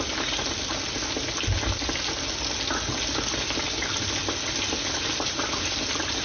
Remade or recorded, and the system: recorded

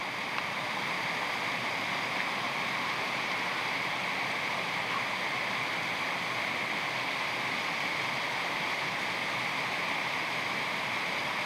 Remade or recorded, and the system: recorded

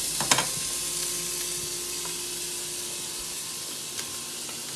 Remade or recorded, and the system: recorded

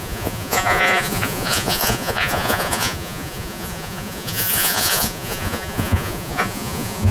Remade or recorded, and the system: remade, vocoder, Vocos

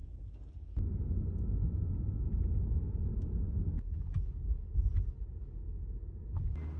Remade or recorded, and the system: recorded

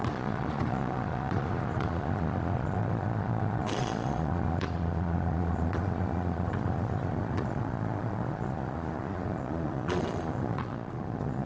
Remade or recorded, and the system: remade, vocoder, Vocos